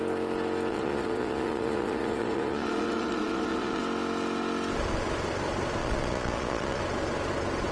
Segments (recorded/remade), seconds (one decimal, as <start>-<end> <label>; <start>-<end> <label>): 0.0-0.7 recorded; 0.7-3.8 remade; 3.8-5.8 recorded; 5.8-6.8 remade; 6.8-7.7 recorded